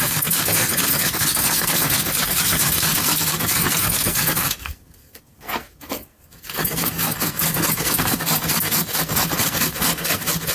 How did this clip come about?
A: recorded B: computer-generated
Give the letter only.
B